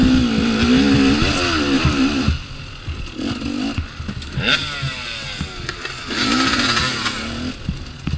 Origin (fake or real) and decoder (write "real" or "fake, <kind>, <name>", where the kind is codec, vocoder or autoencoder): real